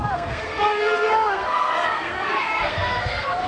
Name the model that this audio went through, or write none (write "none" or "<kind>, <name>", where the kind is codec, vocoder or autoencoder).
codec, SNAC